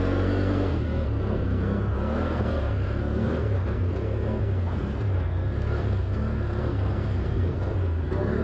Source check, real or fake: fake